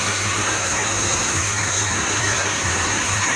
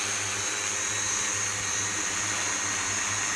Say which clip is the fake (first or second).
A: first